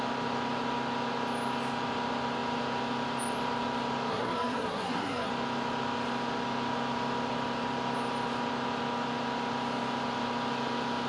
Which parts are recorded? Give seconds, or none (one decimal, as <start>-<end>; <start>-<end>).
0.0-4.1; 5.3-11.1